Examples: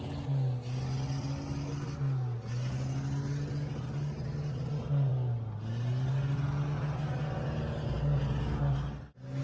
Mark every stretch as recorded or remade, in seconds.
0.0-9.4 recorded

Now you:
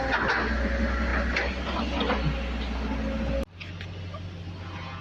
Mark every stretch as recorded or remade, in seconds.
0.0-5.0 recorded

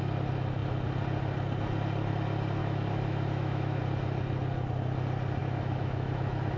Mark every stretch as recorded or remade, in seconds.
0.0-2.6 recorded; 2.6-3.8 remade; 3.8-5.4 recorded; 5.4-6.6 remade

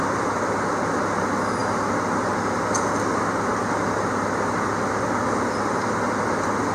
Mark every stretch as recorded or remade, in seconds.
0.0-6.7 recorded

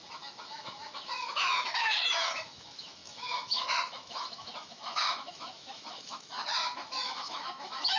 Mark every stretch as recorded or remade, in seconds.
0.0-8.0 remade

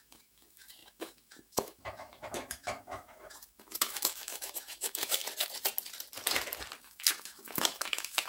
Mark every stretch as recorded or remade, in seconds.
0.0-5.2 remade; 5.2-6.8 recorded; 6.8-8.3 remade

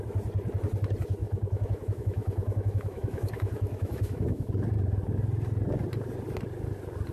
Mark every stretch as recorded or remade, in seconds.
0.0-1.2 recorded; 1.2-4.5 remade; 4.5-7.1 recorded

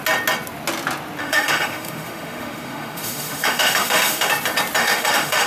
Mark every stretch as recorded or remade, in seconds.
0.0-1.2 recorded; 1.2-4.3 remade; 4.3-4.8 recorded; 4.8-5.5 remade